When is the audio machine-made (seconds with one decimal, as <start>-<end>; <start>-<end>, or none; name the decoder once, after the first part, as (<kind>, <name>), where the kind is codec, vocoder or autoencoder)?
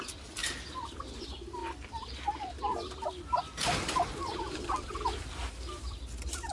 0.0-0.4 (vocoder, BigVGAN v2); 1.0-1.6; 4.2-6.5